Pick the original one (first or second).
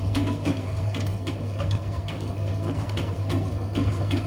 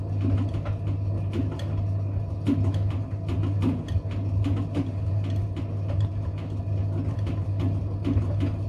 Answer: second